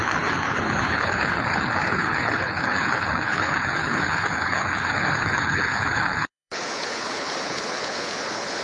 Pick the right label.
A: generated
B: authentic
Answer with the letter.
A